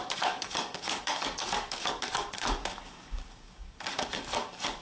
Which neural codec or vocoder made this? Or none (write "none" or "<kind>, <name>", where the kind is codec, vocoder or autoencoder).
codec, DAC